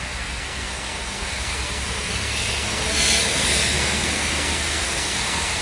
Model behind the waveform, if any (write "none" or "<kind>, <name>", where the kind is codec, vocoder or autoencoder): codec, SNAC